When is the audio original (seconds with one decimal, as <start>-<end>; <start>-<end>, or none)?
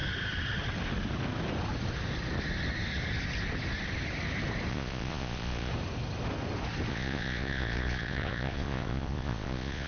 0.0-4.7; 5.7-6.9